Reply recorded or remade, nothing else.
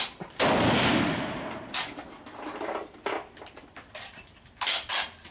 recorded